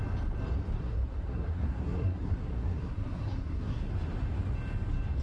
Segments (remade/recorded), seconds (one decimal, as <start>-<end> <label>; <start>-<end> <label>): 0.0-0.8 recorded; 0.8-3.9 remade; 3.9-5.2 recorded